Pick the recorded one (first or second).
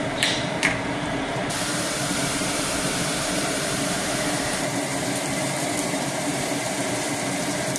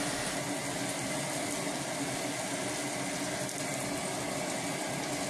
second